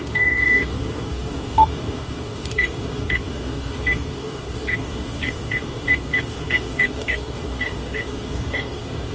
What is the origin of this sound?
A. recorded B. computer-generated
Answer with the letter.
B